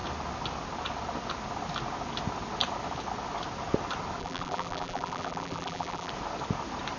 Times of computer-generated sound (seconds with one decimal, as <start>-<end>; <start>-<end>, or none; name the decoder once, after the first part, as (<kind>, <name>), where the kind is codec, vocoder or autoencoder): 4.2-6.1 (vocoder, BigVGAN v2)